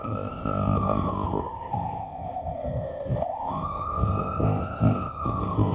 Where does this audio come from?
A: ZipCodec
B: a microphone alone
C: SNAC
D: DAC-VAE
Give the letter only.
A